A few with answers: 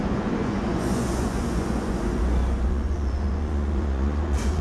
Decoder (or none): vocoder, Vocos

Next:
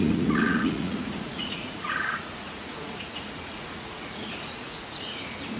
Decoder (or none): vocoder, Vocos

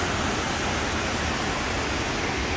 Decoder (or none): none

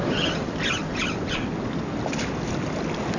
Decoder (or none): none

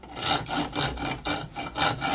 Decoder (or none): none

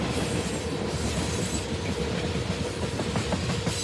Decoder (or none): none